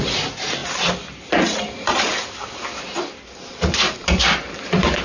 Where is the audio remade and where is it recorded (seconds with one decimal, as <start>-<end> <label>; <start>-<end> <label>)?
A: 0.0-5.0 recorded